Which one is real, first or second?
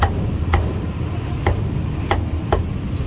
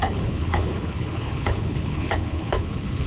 first